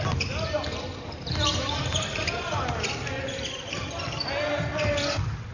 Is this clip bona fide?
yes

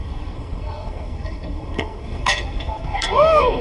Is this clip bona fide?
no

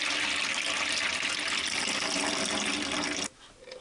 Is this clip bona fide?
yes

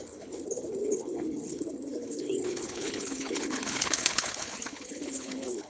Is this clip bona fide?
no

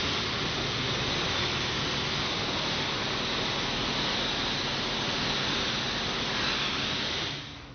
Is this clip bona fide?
yes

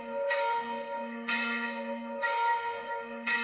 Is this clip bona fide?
no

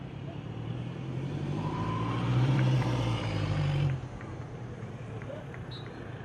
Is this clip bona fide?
no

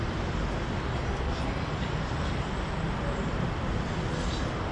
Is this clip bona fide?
no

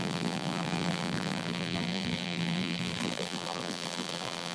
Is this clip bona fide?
no